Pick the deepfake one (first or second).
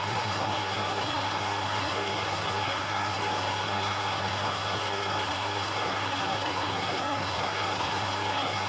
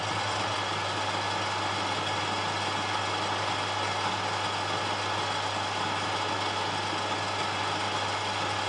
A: first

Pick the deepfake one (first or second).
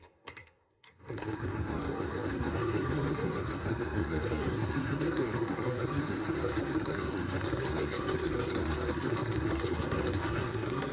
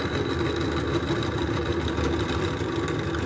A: first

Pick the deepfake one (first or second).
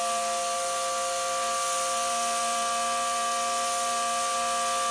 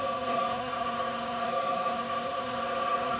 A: second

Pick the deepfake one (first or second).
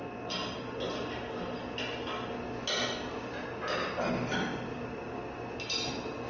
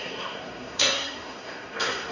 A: second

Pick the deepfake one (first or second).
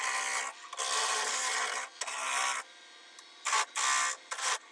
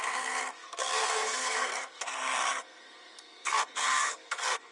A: second